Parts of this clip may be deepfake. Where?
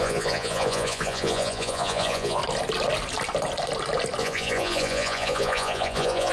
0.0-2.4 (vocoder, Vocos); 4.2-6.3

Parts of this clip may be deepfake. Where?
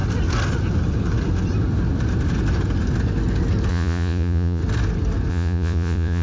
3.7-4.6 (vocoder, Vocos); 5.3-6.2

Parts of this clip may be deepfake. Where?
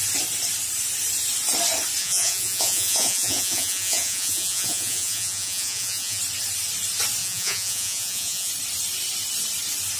2.0-6.2 (vocoder, Vocos); 7.2-8.5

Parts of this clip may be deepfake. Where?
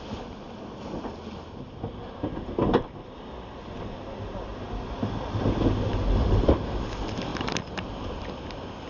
none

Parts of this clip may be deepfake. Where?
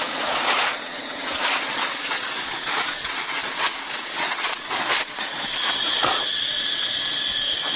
0.0-7.8 (vocoder, Vocos)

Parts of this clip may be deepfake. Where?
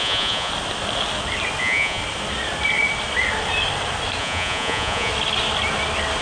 0.0-0.5 (vocoder, Vocos); 1.6-2.0; 4.2-5.1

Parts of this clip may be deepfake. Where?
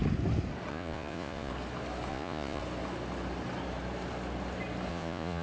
0.7-1.5 (vocoder, Vocos); 2.1-2.6; 4.9-5.4